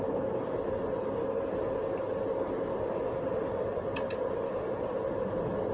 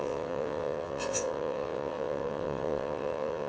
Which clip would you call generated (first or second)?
second